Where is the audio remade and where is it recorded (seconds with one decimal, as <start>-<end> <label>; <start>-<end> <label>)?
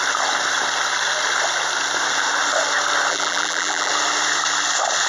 0.0-3.1 recorded; 3.1-3.9 remade; 3.9-5.1 recorded